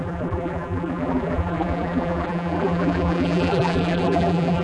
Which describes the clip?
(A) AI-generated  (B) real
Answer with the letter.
A